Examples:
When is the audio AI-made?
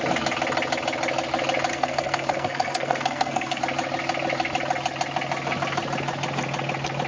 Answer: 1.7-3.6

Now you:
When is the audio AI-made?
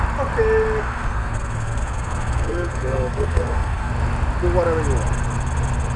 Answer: 0.8-3.9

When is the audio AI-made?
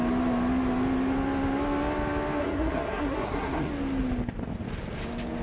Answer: 2.4-3.7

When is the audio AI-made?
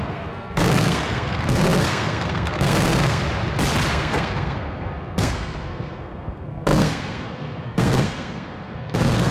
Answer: 0.0-3.2; 3.9-9.3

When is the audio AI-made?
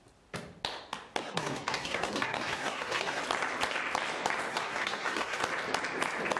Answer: 1.2-3.2; 4.5-5.4